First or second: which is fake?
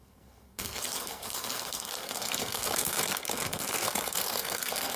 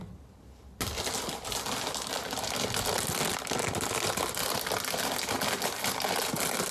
first